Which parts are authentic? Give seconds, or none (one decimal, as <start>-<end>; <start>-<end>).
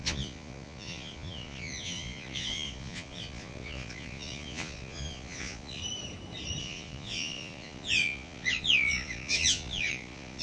5.8-6.6